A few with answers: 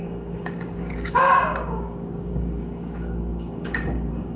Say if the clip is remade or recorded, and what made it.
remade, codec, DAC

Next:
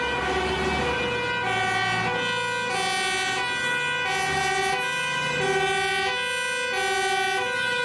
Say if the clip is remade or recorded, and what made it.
recorded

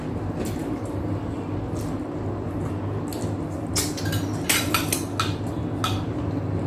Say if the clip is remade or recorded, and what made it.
recorded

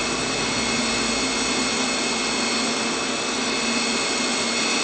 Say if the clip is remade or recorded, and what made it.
recorded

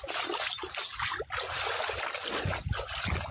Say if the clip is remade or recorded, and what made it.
recorded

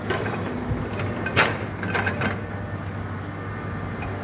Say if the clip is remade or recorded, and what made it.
recorded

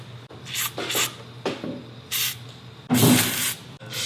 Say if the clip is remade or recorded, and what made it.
recorded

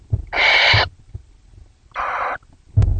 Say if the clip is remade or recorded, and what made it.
recorded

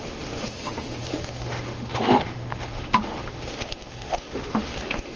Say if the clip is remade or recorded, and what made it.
remade, autoencoder, DAC-VAE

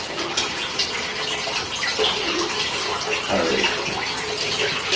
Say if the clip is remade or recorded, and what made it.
recorded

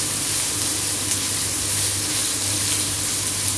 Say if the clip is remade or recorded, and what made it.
recorded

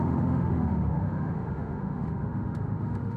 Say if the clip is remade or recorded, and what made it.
remade, autoencoder, DAC-VAE